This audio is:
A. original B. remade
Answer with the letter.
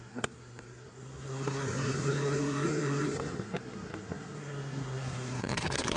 B